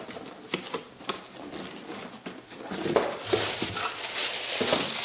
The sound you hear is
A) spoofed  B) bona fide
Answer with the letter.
B